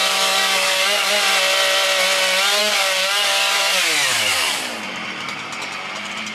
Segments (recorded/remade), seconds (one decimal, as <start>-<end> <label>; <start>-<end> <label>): 0.0-1.1 remade; 1.1-2.6 recorded; 2.6-4.6 remade; 4.6-6.3 recorded